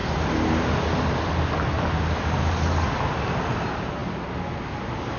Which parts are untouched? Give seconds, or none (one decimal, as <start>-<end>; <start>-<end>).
0.0-5.2